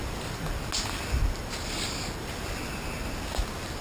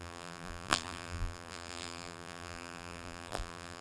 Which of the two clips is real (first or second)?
first